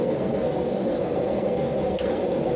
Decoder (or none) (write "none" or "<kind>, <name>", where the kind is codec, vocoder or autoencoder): codec, SNAC